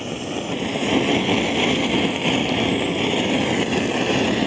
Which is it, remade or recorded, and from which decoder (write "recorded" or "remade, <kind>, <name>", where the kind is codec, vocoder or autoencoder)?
remade, vocoder, BigVGAN v2